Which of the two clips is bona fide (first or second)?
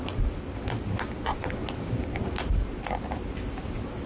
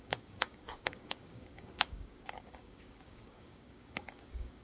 first